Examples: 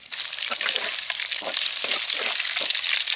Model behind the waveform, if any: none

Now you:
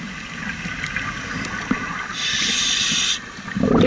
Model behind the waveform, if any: none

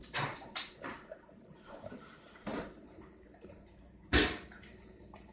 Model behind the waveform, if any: vocoder, BigVGAN v2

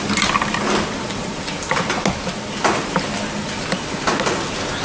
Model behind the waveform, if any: none